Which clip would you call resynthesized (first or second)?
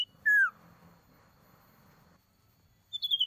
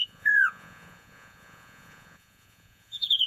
second